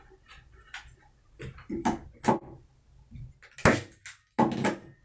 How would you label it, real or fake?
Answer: real